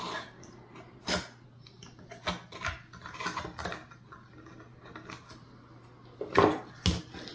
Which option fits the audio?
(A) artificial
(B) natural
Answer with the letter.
B